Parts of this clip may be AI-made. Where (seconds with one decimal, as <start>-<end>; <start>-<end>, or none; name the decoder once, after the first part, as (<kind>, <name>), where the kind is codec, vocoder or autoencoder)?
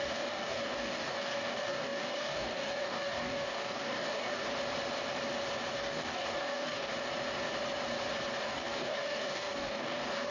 0.0-4.4 (codec, DAC); 5.7-6.9; 8.4-10.3